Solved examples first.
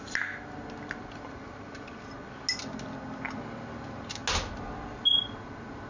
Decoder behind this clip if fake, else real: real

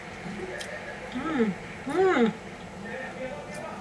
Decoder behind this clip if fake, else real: real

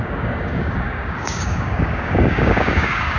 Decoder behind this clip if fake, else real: fake, codec, DAC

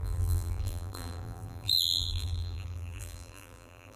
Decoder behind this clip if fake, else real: fake, vocoder, BigVGAN v2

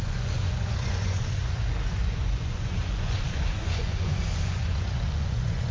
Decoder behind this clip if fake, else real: fake, vocoder, Vocos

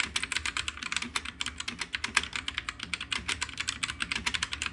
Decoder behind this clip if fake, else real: real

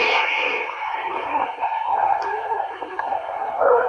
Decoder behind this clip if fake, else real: fake, codec, SNAC